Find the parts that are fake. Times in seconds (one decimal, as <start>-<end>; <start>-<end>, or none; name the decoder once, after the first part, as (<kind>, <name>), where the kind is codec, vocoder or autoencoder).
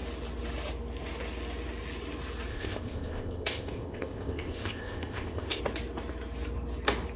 2.5-5.6 (codec, ZipCodec)